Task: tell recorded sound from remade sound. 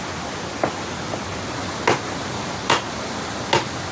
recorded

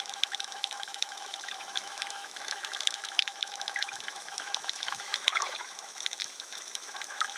remade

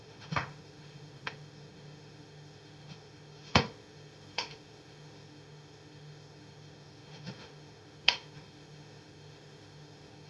remade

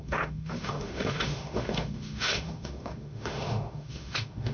remade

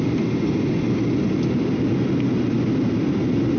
recorded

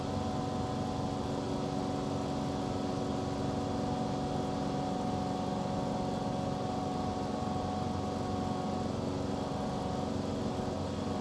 recorded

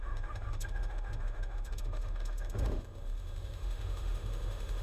remade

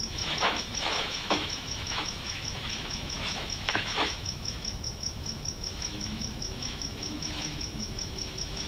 remade